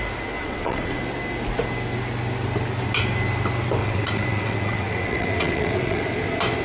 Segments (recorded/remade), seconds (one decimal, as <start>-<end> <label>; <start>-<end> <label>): 0.0-0.4 recorded; 0.4-1.0 remade; 1.0-3.8 recorded; 3.8-6.0 remade; 6.0-6.6 recorded